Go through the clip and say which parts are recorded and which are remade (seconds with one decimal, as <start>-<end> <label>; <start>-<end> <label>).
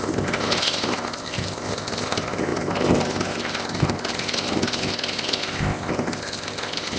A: 0.0-7.0 remade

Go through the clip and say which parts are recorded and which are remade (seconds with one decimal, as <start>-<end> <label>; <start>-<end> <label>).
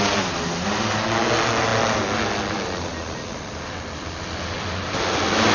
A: 0.0-5.5 recorded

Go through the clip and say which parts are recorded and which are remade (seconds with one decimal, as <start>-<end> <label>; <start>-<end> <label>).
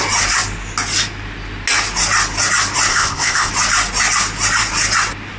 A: 0.0-2.9 recorded; 2.9-3.5 remade; 3.5-5.4 recorded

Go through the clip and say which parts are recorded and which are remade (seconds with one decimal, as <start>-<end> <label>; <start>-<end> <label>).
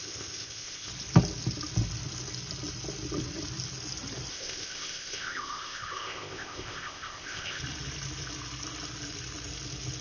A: 0.0-0.9 remade; 0.9-4.3 recorded; 4.3-7.6 remade; 7.6-10.0 recorded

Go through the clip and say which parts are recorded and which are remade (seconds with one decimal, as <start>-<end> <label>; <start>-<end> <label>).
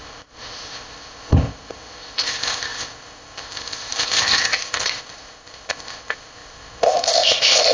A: 0.0-7.7 remade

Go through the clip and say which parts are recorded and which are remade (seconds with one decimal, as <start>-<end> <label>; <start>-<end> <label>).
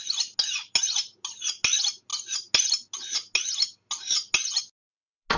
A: 0.0-5.4 recorded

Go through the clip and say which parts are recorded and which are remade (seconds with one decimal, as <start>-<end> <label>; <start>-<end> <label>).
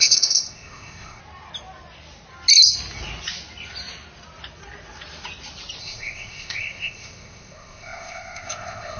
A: 0.0-1.2 remade; 1.2-5.8 recorded; 5.8-9.0 remade